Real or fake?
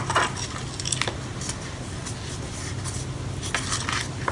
real